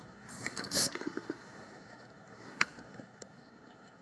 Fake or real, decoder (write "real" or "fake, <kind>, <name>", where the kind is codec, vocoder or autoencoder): fake, codec, SNAC